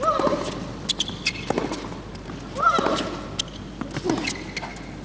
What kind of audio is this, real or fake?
real